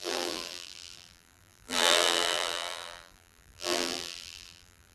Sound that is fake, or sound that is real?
fake